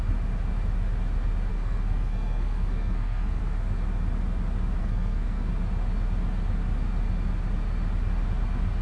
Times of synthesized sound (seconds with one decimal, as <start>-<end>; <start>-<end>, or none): 1.5-3.4; 4.8-5.5